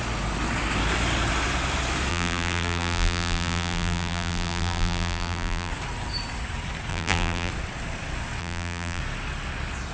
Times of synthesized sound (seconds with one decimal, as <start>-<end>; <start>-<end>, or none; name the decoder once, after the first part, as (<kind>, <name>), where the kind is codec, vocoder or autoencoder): 2.1-5.7 (vocoder, BigVGAN v2); 6.9-7.5; 8.4-9.0